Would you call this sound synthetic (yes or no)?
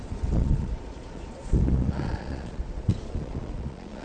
yes